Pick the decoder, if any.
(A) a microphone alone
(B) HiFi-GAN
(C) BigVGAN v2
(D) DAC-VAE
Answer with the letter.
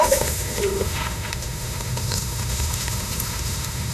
D